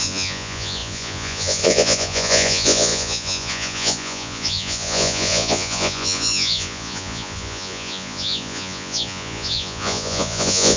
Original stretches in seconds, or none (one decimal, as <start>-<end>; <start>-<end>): none